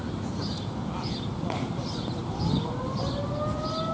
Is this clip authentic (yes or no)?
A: yes